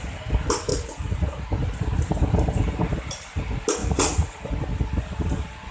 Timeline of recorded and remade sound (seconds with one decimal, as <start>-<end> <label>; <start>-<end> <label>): 0.0-0.7 recorded; 0.7-1.4 remade; 1.4-3.8 recorded; 3.8-4.4 remade; 4.4-5.7 recorded